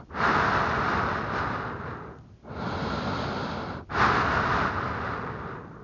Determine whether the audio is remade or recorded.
recorded